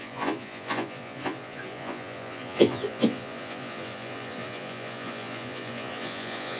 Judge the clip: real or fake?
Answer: fake